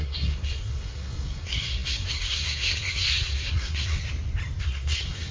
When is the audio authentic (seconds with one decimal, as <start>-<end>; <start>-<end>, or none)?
4.0-4.6